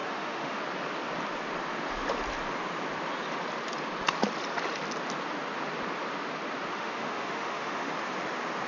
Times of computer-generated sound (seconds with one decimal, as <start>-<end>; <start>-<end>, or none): 0.0-0.6; 6.7-7.9